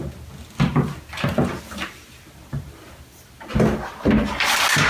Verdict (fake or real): real